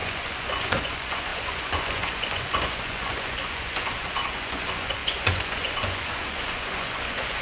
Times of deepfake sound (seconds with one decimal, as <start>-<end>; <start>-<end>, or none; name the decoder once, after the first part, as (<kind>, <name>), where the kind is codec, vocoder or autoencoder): 0.0-7.4 (vocoder, Vocos)